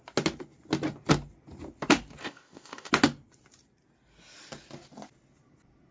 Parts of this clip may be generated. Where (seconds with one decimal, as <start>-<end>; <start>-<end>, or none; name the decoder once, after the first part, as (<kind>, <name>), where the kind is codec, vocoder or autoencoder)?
2.2-2.9 (codec, ZipCodec)